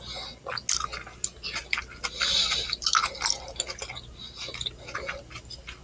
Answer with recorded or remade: recorded